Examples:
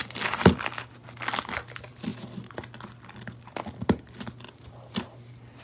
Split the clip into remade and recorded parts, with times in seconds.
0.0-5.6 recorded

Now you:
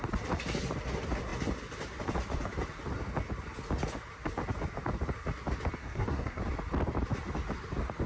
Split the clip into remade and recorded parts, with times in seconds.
0.0-5.8 recorded; 5.8-6.4 remade; 6.4-8.1 recorded

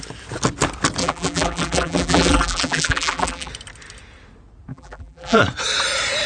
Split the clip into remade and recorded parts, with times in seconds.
0.0-1.0 recorded; 1.0-3.5 remade; 3.5-4.7 recorded; 4.7-5.4 remade; 5.4-6.3 recorded